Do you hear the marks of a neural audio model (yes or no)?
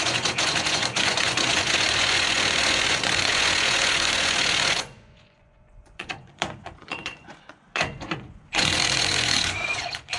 yes